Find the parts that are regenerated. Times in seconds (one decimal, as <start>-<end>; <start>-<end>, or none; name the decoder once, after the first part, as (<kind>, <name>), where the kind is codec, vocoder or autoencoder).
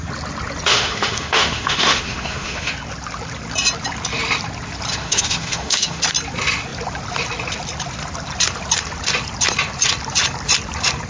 0.7-2.7 (autoencoder, DAC-VAE); 4.9-6.0